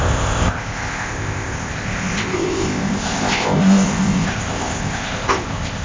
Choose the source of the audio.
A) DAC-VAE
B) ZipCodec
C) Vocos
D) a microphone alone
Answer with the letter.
B